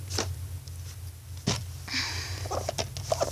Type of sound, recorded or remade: recorded